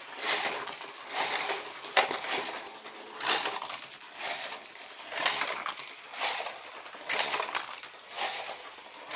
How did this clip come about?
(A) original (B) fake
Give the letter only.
A